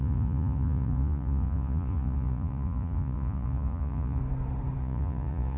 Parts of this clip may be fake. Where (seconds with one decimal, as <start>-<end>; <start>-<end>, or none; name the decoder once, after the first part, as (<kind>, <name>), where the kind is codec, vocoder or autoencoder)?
0.0-4.2 (vocoder, Vocos); 4.8-5.6